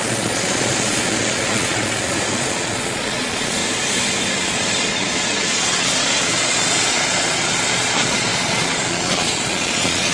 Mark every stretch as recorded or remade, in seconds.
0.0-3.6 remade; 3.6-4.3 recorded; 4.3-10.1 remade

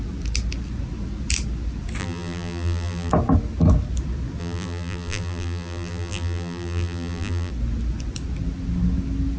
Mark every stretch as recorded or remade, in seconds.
0.0-2.0 recorded; 2.0-3.1 remade; 3.1-4.4 recorded; 4.4-7.5 remade; 7.5-9.4 recorded

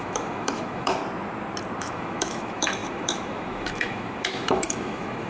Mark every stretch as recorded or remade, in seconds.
0.0-1.0 remade; 1.0-1.8 recorded; 1.8-5.3 remade

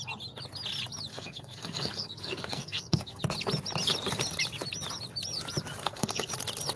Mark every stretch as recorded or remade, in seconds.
0.0-1.1 recorded; 1.1-3.2 remade; 3.2-5.8 recorded; 5.8-6.3 remade; 6.3-6.8 recorded